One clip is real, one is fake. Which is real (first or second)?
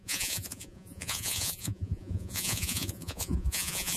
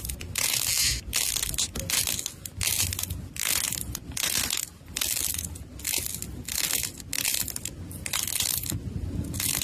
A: second